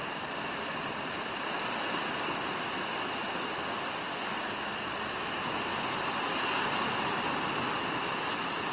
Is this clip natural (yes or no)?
no